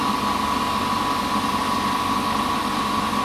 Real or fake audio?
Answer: real